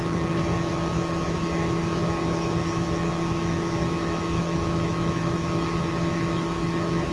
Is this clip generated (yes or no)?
yes